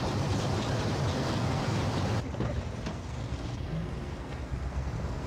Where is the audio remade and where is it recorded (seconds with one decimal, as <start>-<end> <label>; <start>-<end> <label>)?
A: 0.0-1.1 recorded; 1.1-1.8 remade; 1.8-2.9 recorded; 2.9-5.3 remade